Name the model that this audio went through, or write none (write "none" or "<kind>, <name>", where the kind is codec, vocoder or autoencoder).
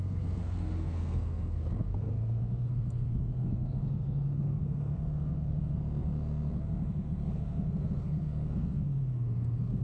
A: codec, SNAC